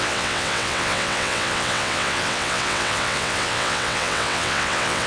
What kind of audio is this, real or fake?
fake